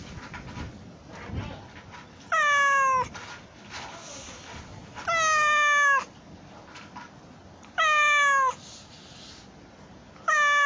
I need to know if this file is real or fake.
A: real